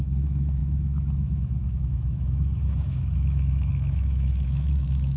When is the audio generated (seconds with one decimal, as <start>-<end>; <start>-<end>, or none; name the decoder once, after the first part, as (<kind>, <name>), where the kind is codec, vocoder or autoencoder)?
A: 0.0-5.2 (autoencoder, DAC-VAE)